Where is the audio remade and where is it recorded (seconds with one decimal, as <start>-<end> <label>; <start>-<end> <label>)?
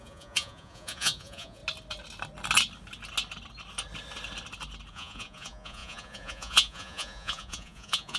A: 0.0-1.6 remade; 1.6-4.9 recorded; 4.9-8.2 remade